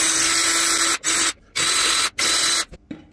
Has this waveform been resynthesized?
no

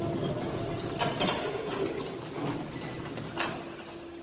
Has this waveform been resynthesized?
no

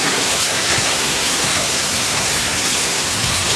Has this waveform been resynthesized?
yes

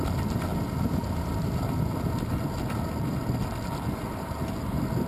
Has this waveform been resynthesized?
no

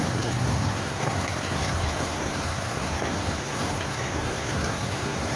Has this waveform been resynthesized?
yes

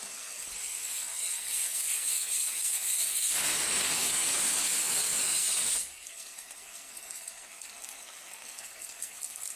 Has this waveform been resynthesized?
yes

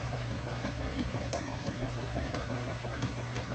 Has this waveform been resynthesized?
yes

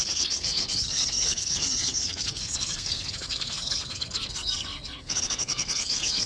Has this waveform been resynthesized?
yes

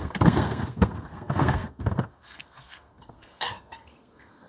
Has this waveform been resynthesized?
yes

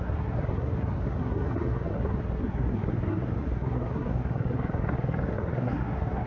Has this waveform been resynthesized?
yes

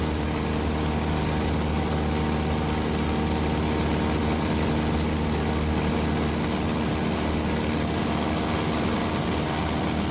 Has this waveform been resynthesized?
no